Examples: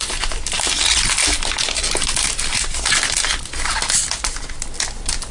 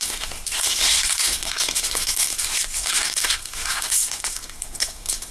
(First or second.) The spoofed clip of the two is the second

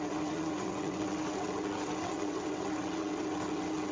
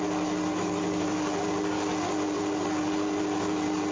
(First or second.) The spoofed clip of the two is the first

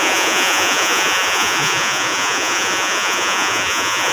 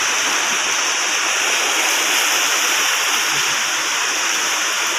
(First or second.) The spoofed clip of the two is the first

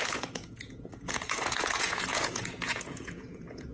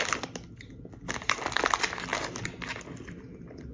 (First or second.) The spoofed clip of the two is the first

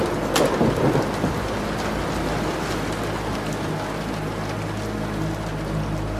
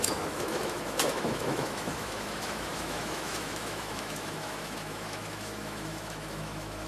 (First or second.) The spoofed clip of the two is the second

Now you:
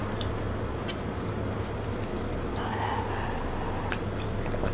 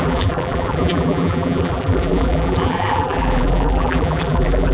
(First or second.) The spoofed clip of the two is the second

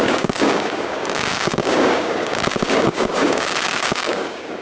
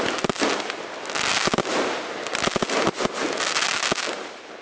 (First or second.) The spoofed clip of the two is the first